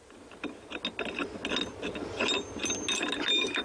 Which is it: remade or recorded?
recorded